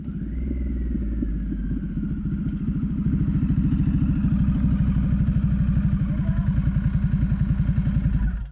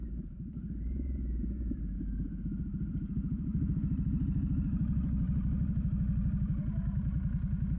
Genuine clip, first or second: first